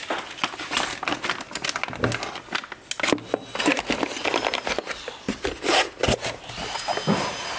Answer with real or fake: real